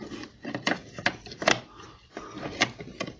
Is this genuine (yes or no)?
yes